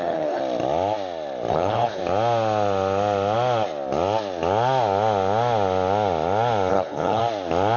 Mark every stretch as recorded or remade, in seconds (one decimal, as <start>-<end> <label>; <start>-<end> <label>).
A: 0.0-0.4 remade; 0.4-1.5 recorded; 1.5-2.0 remade; 2.0-6.7 recorded; 6.7-7.2 remade; 7.2-7.8 recorded